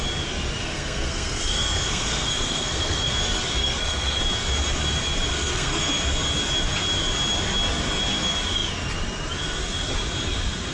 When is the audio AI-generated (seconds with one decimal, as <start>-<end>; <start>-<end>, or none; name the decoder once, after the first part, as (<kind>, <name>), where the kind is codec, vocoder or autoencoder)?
0.6-3.1 (codec, SNAC); 3.6-4.2; 5.3-5.9